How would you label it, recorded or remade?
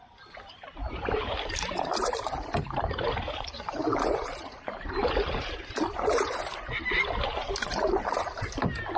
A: remade